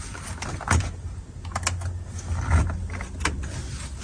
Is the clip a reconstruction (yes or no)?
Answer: no